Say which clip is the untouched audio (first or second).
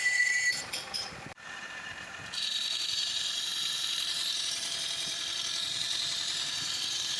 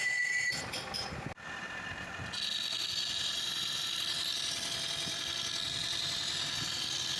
second